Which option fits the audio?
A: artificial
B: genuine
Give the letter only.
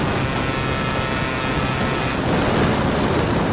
B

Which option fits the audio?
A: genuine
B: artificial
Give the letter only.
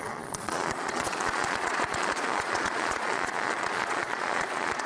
B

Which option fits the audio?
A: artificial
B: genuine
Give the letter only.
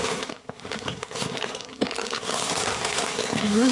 A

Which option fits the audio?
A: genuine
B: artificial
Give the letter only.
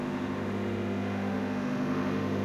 B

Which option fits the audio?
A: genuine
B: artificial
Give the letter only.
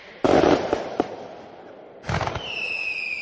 A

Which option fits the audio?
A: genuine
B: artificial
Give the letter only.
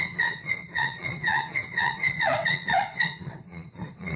B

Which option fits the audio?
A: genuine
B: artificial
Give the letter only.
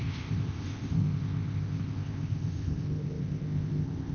B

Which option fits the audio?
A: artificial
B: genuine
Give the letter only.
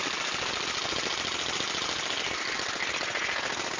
B